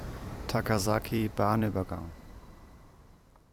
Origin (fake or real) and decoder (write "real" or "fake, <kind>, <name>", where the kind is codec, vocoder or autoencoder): fake, vocoder, BigVGAN v2